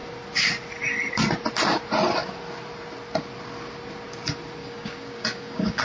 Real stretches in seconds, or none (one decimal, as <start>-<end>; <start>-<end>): 0.0-4.6